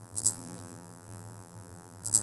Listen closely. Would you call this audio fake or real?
fake